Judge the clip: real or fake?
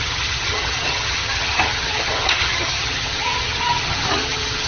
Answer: fake